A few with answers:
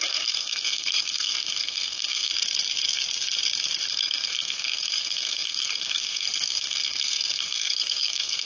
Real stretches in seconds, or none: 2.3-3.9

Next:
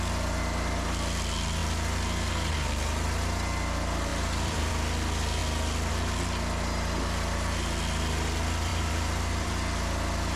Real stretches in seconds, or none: 0.0-4.1; 4.7-8.7; 9.5-10.4